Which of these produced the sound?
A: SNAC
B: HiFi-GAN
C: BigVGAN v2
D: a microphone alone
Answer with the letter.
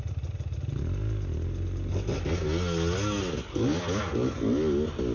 D